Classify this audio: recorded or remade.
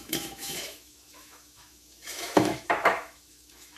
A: remade